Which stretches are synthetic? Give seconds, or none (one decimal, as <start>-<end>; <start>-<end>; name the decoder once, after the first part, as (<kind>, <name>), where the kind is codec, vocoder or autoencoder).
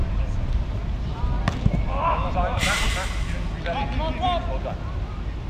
none